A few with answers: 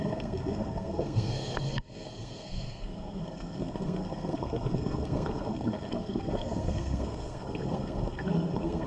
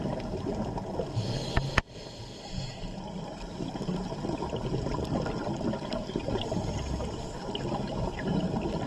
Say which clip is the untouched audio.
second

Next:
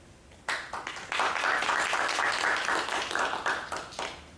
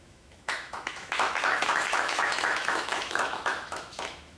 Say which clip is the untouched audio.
first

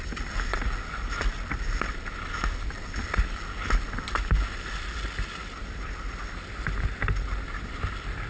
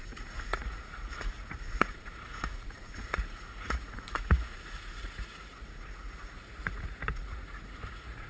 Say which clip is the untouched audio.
first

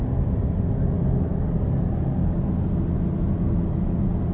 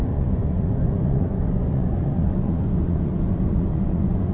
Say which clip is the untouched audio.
first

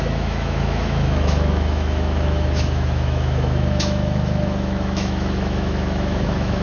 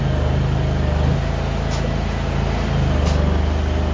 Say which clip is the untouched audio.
second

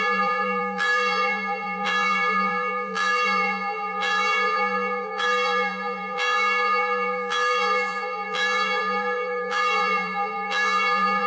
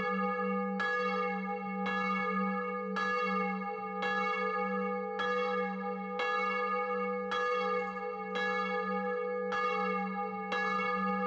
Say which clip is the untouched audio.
second